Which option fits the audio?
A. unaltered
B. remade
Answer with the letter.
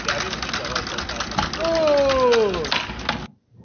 A